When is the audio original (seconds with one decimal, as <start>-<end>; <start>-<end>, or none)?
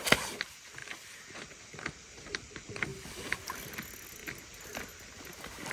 0.0-5.7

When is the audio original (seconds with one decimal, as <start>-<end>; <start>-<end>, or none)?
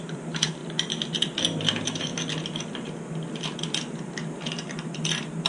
0.6-1.4; 2.1-5.5